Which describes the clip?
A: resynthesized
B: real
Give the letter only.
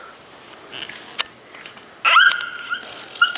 B